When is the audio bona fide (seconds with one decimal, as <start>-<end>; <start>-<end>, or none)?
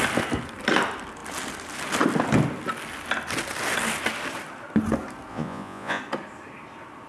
0.0-5.3; 6.0-7.1